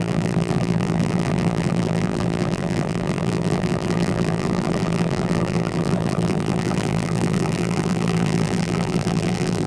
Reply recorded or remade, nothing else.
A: remade